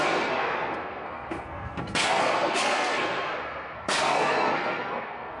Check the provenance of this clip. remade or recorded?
remade